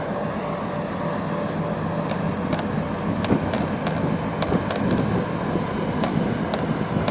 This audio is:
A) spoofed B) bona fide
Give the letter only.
B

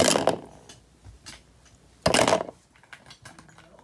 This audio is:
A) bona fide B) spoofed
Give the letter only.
A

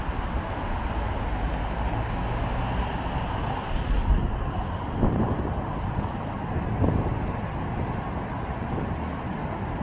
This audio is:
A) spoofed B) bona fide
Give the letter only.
B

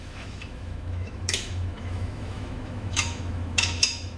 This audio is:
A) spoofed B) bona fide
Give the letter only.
A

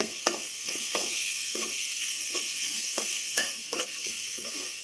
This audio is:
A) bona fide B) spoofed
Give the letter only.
B